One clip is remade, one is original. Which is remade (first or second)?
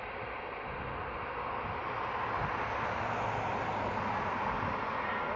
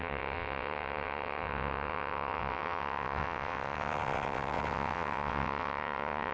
second